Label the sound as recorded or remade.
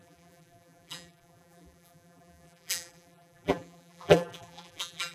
remade